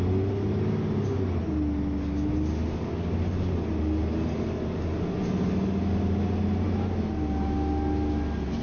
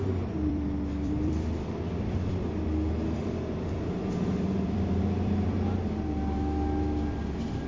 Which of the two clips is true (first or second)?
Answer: first